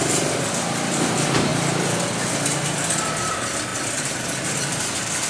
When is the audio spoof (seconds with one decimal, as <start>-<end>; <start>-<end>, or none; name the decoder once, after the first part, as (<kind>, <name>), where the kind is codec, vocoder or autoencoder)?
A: 0.0-1.5 (vocoder, BigVGAN v2); 3.3-5.3